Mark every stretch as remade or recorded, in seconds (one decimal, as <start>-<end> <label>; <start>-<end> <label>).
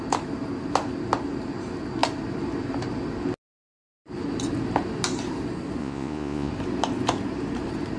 0.0-5.8 recorded; 5.8-6.5 remade; 6.5-8.0 recorded